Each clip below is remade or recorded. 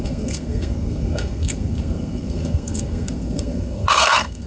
remade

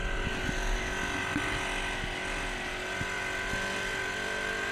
recorded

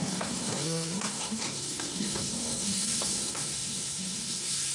remade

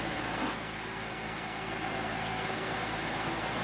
remade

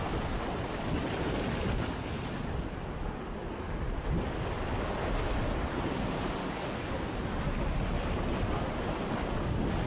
recorded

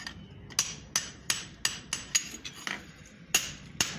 recorded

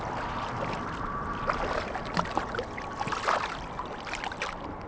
recorded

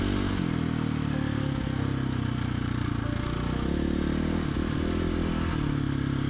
recorded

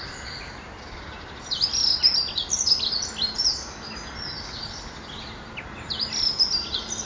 recorded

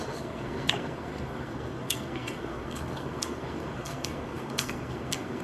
remade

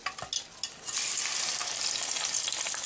recorded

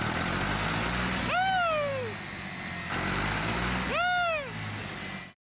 recorded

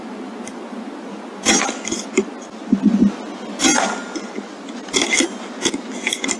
recorded